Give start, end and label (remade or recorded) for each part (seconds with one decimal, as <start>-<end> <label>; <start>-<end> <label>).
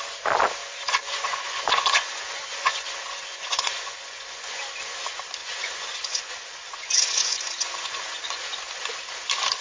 0.0-0.6 recorded; 0.6-4.6 remade; 4.6-5.4 recorded; 5.4-8.4 remade; 8.4-9.6 recorded